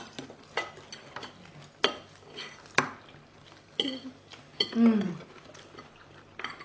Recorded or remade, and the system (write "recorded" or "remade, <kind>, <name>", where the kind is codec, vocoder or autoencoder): recorded